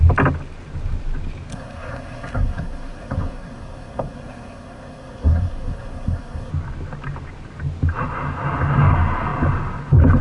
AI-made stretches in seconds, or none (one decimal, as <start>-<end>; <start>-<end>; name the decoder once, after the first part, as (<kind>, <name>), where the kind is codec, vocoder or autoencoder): 1.5-6.5 (codec, SNAC)